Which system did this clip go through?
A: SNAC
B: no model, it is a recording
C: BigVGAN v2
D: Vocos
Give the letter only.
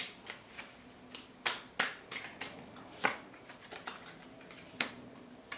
B